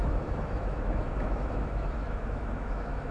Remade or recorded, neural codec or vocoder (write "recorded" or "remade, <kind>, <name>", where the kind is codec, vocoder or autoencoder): remade, autoencoder, DAC-VAE